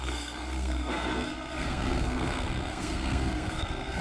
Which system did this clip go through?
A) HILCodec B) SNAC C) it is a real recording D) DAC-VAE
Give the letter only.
B